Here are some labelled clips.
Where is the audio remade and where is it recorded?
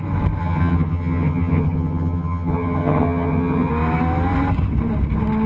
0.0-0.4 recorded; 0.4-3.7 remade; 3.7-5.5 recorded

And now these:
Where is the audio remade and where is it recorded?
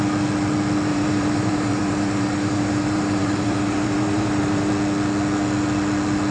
0.0-0.9 recorded; 0.9-4.7 remade; 4.7-6.3 recorded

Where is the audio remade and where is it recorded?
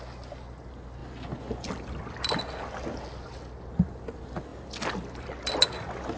0.0-6.2 recorded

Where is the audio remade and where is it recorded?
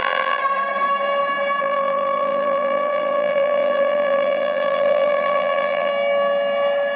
0.0-0.4 remade; 0.4-1.6 recorded; 1.6-5.9 remade; 5.9-7.0 recorded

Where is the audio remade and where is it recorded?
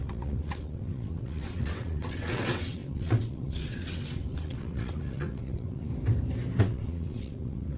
0.0-5.9 remade; 5.9-6.6 recorded; 6.6-7.8 remade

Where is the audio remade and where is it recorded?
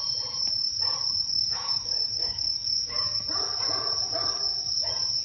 0.0-1.3 recorded; 1.3-3.2 remade; 3.2-5.2 recorded